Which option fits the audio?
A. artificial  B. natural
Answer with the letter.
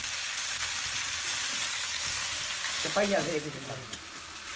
B